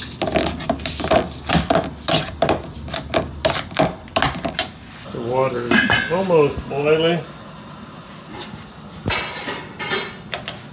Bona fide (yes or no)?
yes